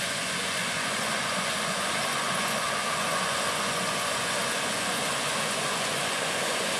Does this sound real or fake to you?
fake